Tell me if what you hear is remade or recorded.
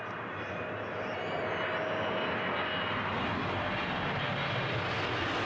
recorded